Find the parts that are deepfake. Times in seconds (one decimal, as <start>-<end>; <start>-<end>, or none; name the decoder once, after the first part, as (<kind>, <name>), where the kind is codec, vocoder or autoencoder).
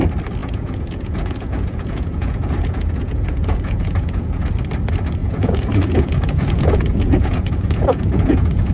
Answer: 0.4-4.5 (vocoder, Vocos); 5.2-8.7